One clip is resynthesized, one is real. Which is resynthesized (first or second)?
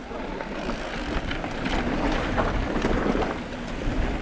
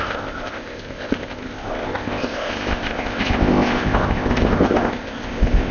second